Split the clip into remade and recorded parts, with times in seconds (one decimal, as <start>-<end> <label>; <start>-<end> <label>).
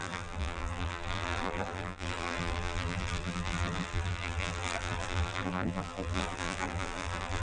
0.0-7.4 remade